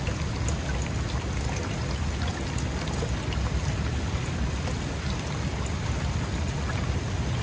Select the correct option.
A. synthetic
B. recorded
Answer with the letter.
B